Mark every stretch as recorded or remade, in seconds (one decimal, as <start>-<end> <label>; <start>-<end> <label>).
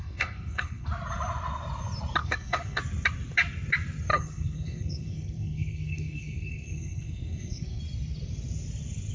0.0-0.9 remade; 0.9-2.2 recorded; 2.2-2.8 remade; 2.8-4.1 recorded; 4.1-7.8 remade; 7.8-9.1 recorded